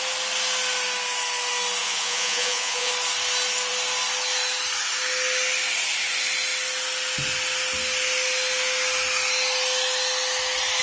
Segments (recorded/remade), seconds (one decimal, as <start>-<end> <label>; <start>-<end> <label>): 0.0-1.8 recorded; 1.8-2.9 remade; 2.9-10.8 recorded